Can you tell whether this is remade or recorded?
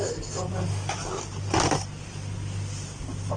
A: recorded